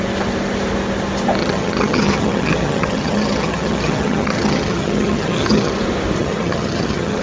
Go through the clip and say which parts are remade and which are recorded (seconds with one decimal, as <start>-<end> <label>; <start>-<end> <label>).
0.0-1.4 recorded; 1.4-5.7 remade; 5.7-6.2 recorded; 6.2-7.2 remade